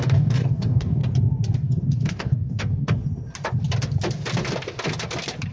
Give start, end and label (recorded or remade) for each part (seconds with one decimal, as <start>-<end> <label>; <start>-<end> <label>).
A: 0.0-1.0 remade; 1.0-1.6 recorded; 1.6-3.0 remade; 3.0-5.5 recorded